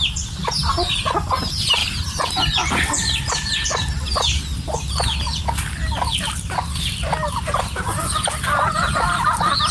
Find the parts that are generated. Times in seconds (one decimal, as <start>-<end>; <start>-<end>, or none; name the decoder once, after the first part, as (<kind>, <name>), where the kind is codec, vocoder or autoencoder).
none